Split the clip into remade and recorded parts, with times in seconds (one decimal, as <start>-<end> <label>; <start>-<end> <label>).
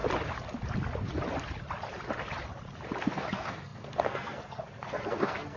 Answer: 0.0-3.0 recorded; 3.0-5.6 remade